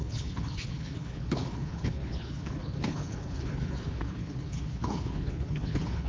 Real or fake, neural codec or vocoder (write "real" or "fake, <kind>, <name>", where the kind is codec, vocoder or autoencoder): fake, codec, HILCodec